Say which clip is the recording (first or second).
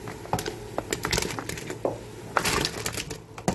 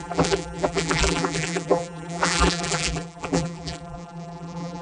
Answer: first